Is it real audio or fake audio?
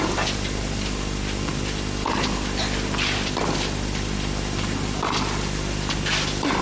real